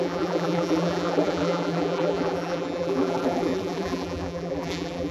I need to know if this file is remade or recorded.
remade